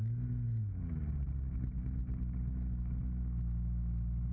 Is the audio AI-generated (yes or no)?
no